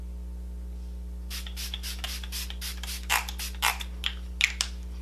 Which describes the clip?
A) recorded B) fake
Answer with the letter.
A